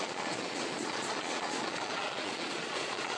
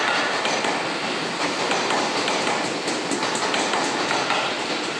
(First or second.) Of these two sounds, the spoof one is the first